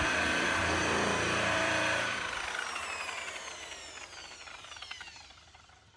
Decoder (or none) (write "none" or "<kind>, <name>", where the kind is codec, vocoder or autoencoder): vocoder, BigVGAN v2